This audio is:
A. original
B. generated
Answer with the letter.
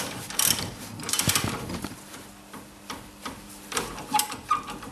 A